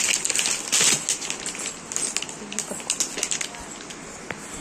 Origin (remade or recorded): recorded